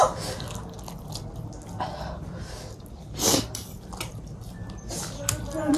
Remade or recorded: recorded